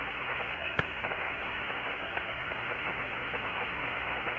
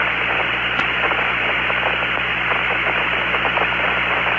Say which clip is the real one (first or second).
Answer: second